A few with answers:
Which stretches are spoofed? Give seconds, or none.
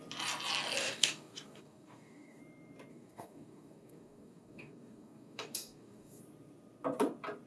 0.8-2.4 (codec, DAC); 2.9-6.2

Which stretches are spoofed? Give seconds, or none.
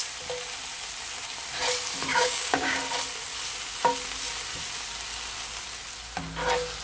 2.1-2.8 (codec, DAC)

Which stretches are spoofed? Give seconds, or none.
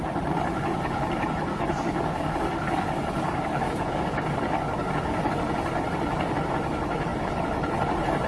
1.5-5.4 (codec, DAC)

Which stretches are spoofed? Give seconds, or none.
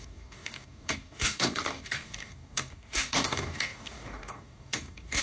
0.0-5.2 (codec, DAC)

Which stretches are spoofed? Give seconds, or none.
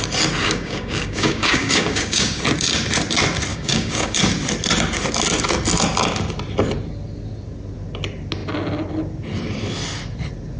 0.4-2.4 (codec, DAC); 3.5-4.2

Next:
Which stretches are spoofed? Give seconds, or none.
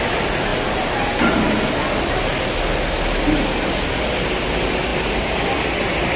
none